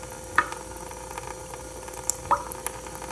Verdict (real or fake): real